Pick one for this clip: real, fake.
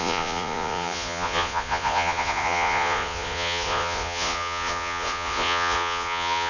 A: fake